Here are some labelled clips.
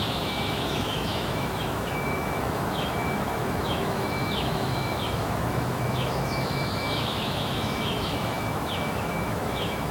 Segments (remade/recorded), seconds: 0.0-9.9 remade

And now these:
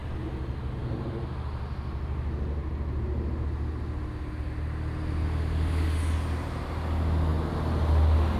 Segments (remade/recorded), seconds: 0.0-8.4 recorded